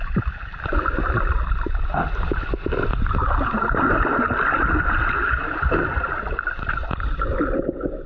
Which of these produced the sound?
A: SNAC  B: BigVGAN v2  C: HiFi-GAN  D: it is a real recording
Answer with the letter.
B